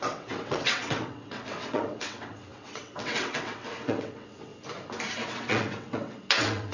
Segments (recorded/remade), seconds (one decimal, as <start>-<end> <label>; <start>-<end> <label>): 0.0-4.5 remade; 4.5-5.2 recorded; 5.2-6.7 remade